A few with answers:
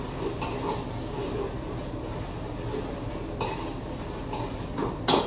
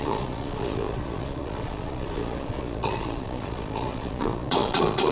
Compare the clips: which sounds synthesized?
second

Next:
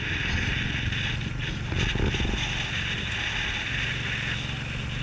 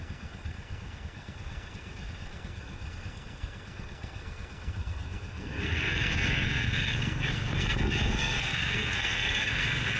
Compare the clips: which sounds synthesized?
second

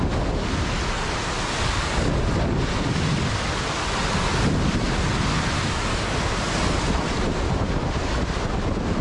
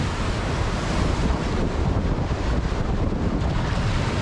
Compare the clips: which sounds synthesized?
second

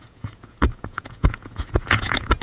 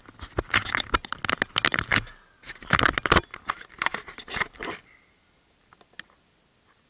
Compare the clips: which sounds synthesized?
first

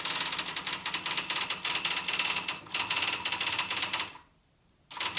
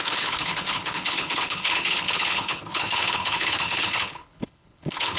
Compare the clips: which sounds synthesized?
second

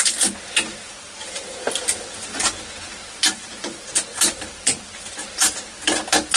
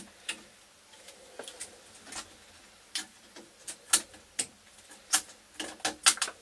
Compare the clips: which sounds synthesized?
first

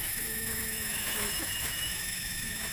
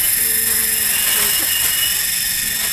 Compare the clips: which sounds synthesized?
first